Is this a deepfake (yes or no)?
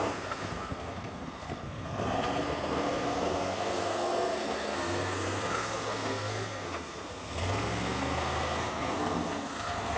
yes